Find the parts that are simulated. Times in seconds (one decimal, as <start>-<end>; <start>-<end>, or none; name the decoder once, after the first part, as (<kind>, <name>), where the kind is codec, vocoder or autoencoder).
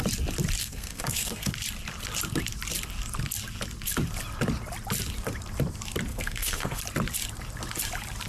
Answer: 0.6-1.5 (codec, SNAC); 6.1-6.8